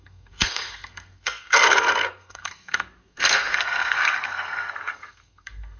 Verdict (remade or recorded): remade